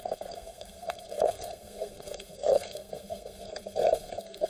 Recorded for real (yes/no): no